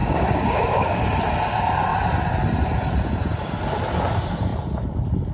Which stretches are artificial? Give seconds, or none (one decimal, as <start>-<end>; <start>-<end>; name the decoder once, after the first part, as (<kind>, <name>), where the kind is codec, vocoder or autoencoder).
0.0-1.0 (codec, DAC)